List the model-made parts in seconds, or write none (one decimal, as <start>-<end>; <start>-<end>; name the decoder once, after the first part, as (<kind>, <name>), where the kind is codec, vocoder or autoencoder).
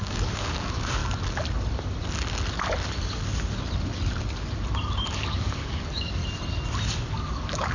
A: 0.0-1.0 (codec, DAC); 5.1-6.2; 7.1-7.7